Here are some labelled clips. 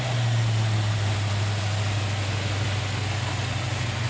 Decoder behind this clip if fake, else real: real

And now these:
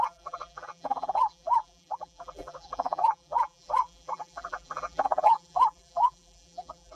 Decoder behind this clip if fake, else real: fake, vocoder, BigVGAN v2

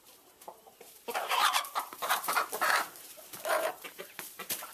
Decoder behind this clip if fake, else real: fake, vocoder, BigVGAN v2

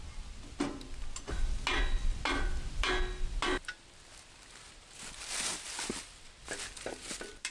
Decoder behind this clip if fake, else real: real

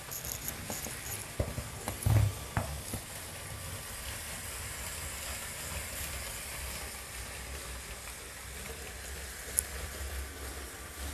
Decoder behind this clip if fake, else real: real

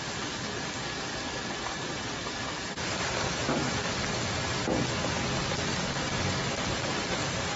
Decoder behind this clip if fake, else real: real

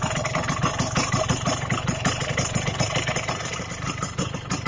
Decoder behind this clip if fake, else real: fake, vocoder, BigVGAN v2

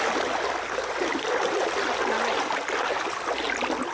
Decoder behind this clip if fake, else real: real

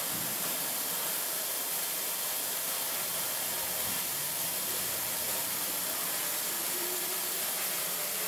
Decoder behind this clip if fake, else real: fake, vocoder, BigVGAN v2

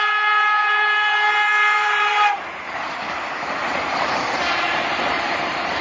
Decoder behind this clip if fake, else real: fake, vocoder, BigVGAN v2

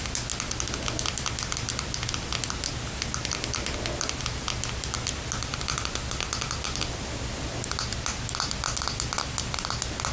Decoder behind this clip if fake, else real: real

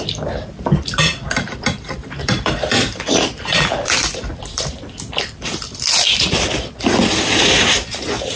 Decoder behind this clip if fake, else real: fake, vocoder, BigVGAN v2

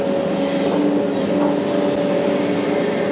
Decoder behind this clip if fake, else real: real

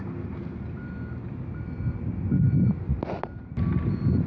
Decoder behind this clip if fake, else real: real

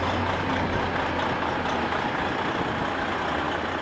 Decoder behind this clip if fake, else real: real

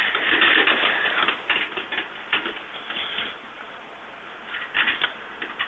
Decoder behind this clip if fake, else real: real